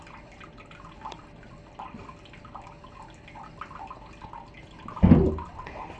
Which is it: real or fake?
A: real